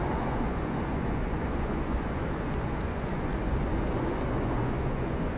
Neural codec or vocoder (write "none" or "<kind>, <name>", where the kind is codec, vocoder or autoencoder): vocoder, Vocos